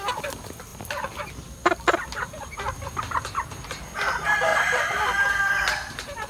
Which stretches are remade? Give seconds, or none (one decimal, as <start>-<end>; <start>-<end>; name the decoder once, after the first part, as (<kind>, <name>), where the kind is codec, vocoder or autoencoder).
0.7-3.0 (vocoder, BigVGAN v2); 4.5-6.3